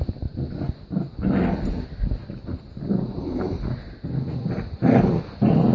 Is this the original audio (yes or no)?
yes